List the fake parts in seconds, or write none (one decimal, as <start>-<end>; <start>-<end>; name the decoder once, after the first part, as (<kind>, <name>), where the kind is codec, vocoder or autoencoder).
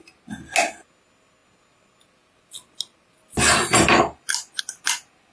none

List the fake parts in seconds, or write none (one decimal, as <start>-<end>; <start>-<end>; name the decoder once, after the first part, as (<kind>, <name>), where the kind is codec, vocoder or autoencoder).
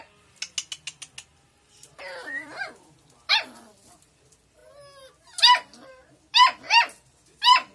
1.3-2.6 (vocoder, BigVGAN v2)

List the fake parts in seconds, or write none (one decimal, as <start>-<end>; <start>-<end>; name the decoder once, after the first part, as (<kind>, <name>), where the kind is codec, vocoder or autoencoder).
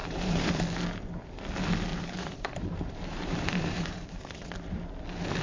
0.0-0.5 (vocoder, BigVGAN v2); 1.9-4.2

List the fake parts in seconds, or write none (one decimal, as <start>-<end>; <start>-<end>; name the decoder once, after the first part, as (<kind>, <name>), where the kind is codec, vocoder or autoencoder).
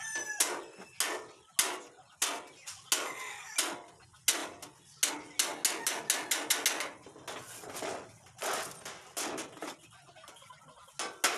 none